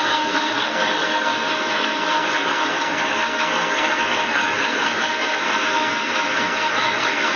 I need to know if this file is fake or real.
fake